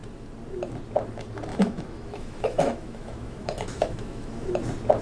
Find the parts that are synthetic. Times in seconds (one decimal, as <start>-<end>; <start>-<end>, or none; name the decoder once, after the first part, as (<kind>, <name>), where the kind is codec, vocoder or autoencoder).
1.5-4.5 (autoencoder, DAC-VAE)